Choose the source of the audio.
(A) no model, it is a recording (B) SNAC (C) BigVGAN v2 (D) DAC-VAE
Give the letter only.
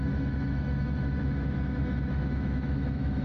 D